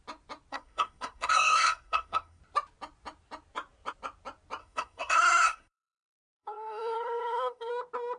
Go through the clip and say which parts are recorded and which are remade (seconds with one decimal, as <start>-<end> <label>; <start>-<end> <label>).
0.0-0.5 recorded; 0.5-2.4 remade; 2.4-4.6 recorded; 4.6-7.7 remade; 7.7-8.2 recorded

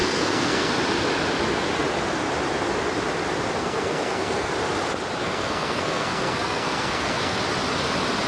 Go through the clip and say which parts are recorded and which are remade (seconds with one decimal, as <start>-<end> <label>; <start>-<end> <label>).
0.0-0.7 remade; 0.7-3.6 recorded; 3.6-4.5 remade; 4.5-5.2 recorded; 5.2-7.4 remade; 7.4-8.3 recorded

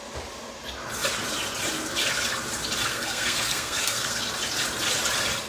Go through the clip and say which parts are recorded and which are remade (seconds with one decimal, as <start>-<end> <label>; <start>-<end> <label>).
0.0-2.9 recorded; 2.9-4.2 remade; 4.2-5.5 recorded

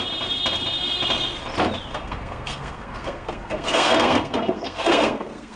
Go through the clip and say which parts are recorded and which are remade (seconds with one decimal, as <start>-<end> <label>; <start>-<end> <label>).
0.0-1.9 recorded; 1.9-5.6 remade

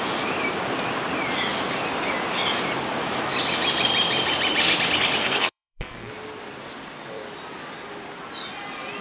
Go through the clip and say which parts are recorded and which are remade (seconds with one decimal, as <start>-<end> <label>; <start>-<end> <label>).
0.0-5.2 recorded; 5.2-6.1 remade; 6.1-9.0 recorded

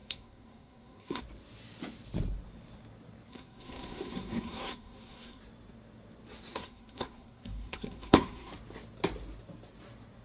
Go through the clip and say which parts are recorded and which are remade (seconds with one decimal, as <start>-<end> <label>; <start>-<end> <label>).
0.0-1.2 remade; 1.2-3.3 recorded; 3.3-5.4 remade; 5.4-6.5 recorded; 6.5-8.5 remade; 8.5-10.2 recorded